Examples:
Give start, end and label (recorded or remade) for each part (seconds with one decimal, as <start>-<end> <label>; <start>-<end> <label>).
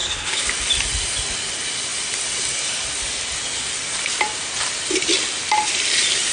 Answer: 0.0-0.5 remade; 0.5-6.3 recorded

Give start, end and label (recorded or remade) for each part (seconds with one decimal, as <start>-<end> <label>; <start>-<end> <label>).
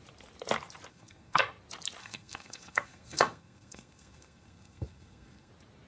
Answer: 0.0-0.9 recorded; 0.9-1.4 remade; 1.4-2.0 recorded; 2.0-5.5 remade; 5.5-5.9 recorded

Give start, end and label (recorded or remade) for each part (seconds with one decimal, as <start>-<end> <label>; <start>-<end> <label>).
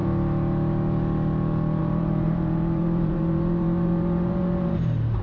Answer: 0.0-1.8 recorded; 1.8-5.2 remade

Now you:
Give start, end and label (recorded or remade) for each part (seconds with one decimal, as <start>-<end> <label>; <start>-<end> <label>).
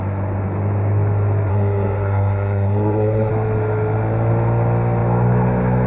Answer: 0.0-1.5 recorded; 1.5-3.3 remade; 3.3-5.9 recorded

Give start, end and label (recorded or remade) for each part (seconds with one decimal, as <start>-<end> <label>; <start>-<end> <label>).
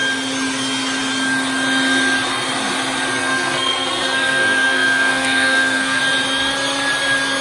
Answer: 0.0-3.2 recorded; 3.2-6.0 remade; 6.0-7.4 recorded